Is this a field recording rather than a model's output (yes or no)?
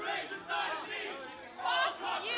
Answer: yes